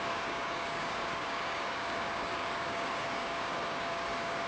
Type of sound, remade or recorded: remade